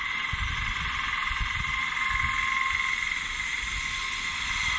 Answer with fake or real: real